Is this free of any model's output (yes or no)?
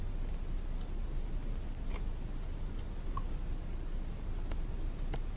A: yes